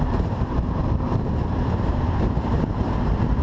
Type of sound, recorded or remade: remade